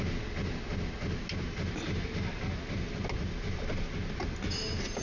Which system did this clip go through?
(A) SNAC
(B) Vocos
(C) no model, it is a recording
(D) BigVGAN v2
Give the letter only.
C